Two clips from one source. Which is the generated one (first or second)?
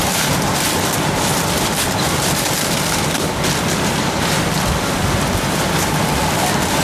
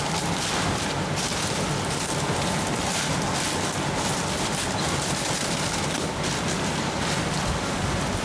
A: first